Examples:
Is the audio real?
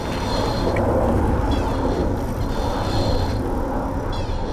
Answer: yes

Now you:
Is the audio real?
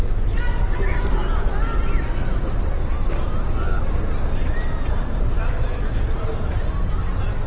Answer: yes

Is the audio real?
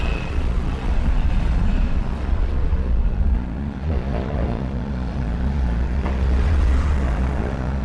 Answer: no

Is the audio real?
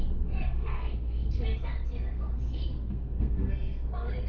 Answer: no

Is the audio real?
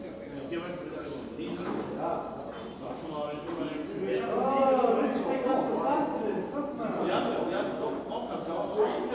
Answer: yes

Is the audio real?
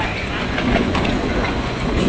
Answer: no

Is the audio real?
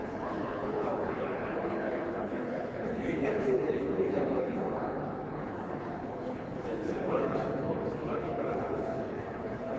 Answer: no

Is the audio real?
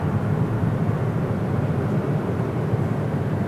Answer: yes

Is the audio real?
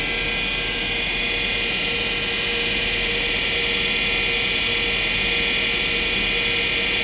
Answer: yes